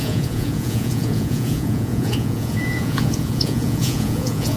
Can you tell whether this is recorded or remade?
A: remade